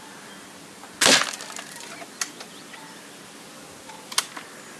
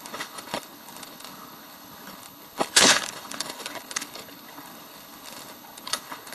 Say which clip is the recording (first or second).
first